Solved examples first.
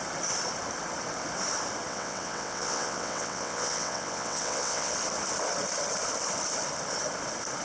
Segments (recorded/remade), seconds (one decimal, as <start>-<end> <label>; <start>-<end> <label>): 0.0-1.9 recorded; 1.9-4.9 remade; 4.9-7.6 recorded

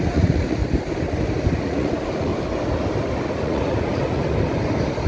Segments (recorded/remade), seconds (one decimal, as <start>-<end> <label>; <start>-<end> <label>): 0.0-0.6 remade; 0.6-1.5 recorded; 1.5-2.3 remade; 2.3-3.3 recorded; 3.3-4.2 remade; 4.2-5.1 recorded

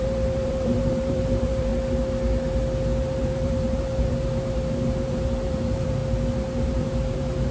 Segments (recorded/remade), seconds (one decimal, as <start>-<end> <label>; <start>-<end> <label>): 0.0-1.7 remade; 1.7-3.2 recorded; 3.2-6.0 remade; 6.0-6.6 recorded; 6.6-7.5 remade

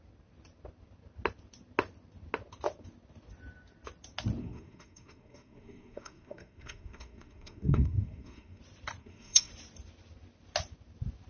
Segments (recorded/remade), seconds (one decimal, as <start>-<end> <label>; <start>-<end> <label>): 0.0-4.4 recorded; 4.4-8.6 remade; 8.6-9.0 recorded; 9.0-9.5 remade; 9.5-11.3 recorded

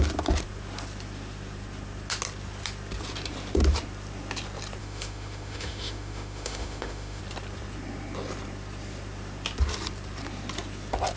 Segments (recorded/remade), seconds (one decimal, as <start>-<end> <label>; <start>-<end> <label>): 0.0-4.8 recorded; 4.8-7.2 remade; 7.2-11.2 recorded